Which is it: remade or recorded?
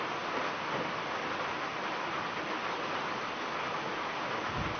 remade